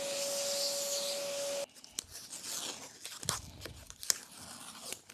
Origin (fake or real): real